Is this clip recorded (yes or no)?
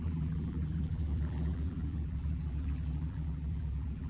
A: no